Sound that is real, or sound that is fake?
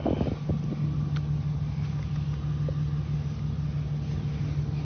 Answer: real